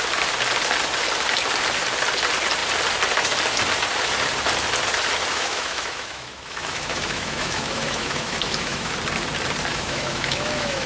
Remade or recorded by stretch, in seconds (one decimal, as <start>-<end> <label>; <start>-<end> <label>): 0.0-5.3 recorded; 5.3-8.9 remade; 8.9-9.7 recorded; 9.7-10.9 remade